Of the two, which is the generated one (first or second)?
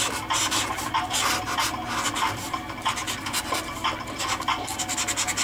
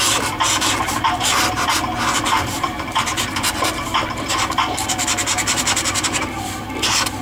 second